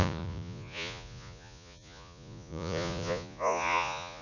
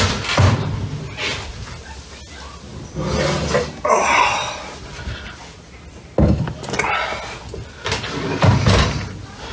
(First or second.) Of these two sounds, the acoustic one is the second